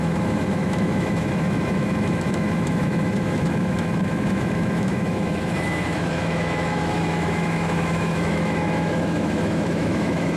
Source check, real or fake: fake